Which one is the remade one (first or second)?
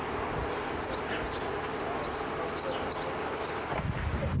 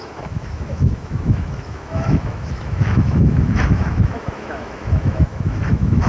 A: second